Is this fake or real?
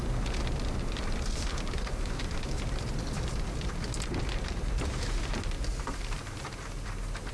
fake